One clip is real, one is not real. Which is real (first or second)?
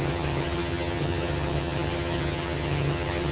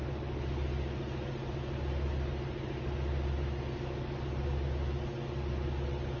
second